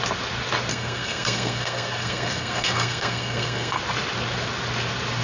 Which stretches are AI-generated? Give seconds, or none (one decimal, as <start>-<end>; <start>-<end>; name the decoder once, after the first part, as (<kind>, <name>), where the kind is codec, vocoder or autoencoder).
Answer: 0.7-3.8 (codec, SNAC)